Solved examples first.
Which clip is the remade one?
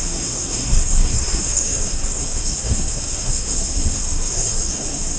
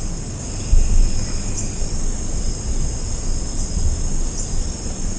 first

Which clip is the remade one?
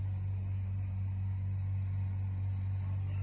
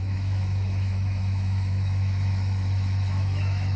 second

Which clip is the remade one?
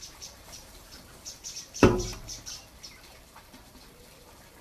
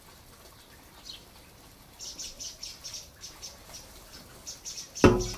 first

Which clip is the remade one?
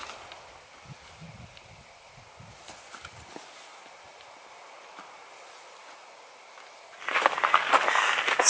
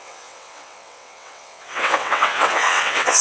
second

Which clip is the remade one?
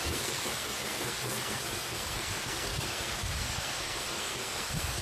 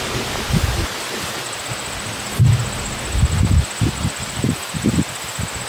first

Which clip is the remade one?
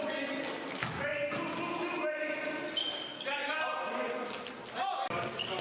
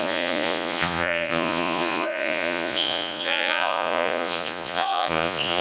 second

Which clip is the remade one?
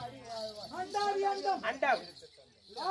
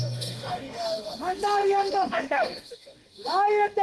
second